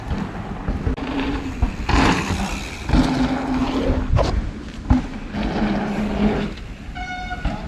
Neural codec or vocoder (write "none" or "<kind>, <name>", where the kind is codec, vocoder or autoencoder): none